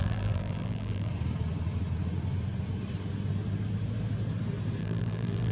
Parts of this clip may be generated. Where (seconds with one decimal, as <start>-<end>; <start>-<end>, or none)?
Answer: 0.0-1.1; 4.8-5.5